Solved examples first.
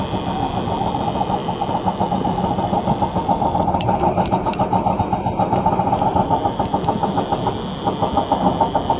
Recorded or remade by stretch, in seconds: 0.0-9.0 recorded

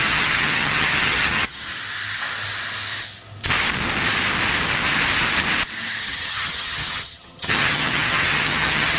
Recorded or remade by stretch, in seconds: 0.0-1.7 remade; 1.7-6.0 recorded; 6.0-9.0 remade